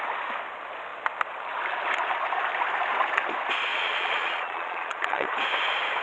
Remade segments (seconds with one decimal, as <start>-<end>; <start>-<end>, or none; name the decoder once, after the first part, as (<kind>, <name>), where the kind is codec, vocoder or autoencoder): 3.7-5.3 (vocoder, Vocos)